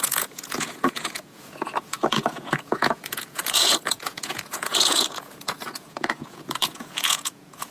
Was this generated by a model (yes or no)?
yes